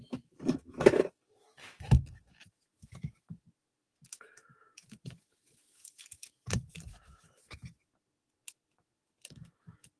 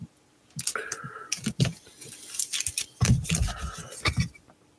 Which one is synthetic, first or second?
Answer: first